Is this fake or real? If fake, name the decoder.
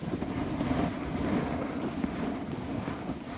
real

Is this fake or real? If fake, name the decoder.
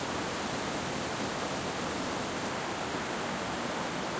real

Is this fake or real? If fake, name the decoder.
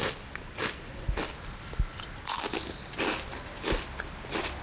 real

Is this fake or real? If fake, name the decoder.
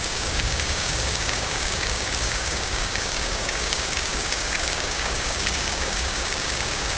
fake, codec, DAC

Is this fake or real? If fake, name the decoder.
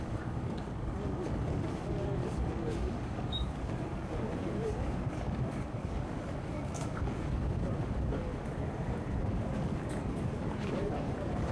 fake, codec, DAC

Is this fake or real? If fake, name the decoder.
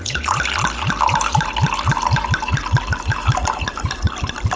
real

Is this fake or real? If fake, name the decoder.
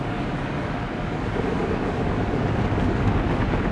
fake, codec, DAC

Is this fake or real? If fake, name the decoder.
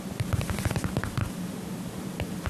real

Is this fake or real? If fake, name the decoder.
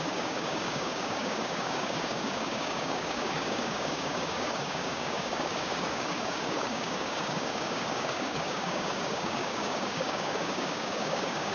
fake, codec, DAC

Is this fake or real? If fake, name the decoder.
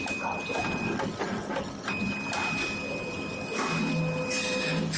real